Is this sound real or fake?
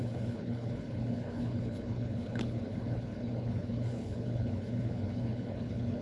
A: fake